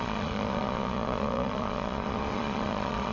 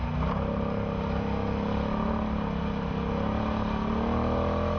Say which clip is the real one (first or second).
second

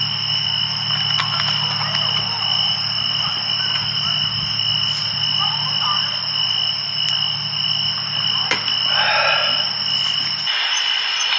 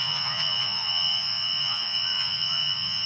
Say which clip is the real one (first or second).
first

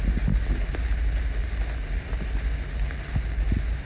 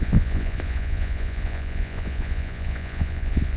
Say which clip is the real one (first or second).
first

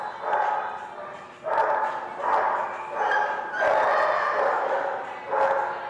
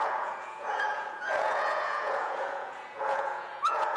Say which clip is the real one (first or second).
first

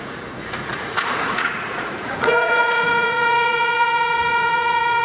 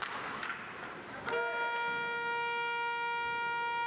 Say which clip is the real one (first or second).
second